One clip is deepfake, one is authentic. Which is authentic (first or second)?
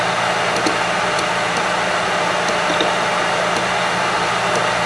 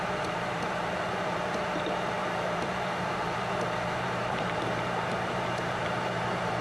first